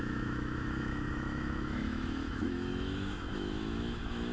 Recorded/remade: remade